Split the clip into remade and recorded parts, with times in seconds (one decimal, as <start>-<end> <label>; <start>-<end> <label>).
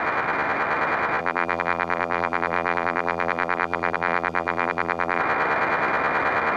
0.0-1.2 recorded; 1.2-5.2 remade; 5.2-6.6 recorded